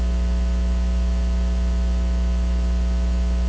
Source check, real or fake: real